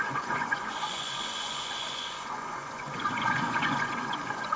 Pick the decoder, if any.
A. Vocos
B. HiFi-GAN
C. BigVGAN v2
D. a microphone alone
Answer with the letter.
A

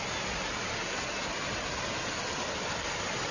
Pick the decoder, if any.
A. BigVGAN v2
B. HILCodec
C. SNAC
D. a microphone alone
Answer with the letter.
D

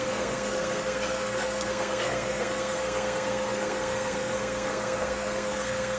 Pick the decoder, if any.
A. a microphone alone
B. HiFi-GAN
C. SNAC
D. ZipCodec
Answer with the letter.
C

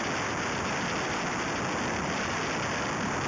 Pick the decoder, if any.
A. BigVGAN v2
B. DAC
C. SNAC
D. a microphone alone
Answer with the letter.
D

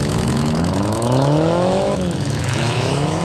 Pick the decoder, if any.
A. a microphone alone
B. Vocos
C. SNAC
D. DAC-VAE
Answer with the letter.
D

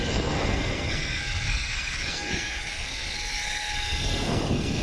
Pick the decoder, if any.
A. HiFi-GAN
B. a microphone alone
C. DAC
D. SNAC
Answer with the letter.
D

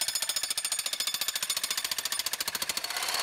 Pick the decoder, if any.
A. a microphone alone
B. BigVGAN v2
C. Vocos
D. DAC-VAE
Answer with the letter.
A